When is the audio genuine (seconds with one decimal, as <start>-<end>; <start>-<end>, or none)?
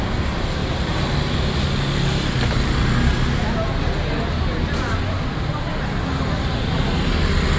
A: 0.0-7.6